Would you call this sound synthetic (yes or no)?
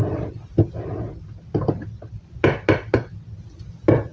no